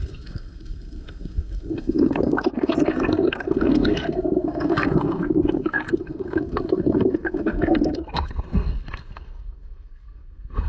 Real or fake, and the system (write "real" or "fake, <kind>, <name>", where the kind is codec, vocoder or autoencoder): fake, codec, SNAC